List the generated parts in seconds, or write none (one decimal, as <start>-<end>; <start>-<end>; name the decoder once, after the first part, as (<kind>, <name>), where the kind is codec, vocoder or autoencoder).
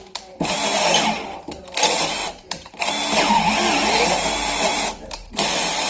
2.2-2.9 (vocoder, BigVGAN v2); 4.7-5.9